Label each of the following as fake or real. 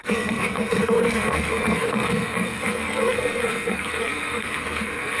fake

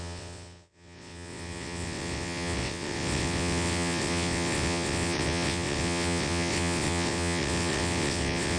fake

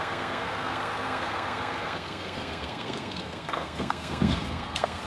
fake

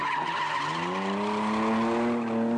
real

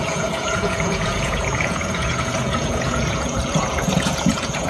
fake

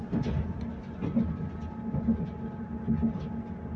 real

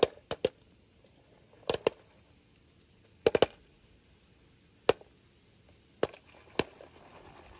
real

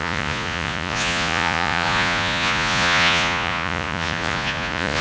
fake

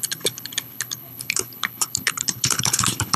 fake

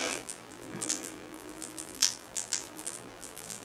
fake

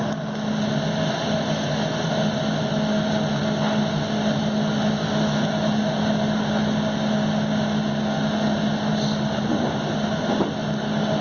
real